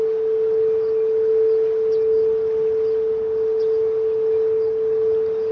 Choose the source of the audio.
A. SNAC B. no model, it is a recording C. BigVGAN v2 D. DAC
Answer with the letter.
B